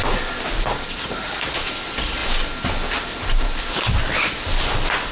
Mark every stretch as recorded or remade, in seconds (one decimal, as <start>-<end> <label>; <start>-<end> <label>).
0.0-0.9 recorded; 0.9-2.2 remade; 2.2-5.1 recorded